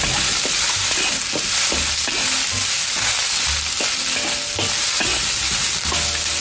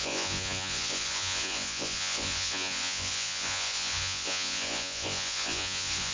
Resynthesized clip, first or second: second